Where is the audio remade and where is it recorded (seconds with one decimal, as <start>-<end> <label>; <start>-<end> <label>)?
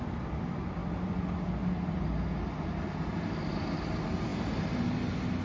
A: 0.0-4.3 recorded; 4.3-4.8 remade; 4.8-5.4 recorded